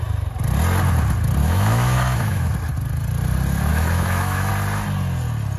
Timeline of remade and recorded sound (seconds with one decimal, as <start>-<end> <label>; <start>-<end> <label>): 0.0-1.4 recorded; 1.4-2.5 remade; 2.5-3.7 recorded; 3.7-4.5 remade; 4.5-5.6 recorded